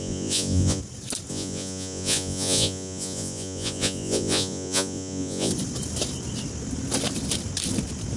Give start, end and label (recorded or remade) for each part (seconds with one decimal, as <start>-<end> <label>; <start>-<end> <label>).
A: 0.0-0.8 remade; 0.8-1.3 recorded; 1.3-5.5 remade; 5.5-8.2 recorded